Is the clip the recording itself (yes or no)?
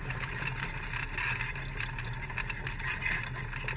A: yes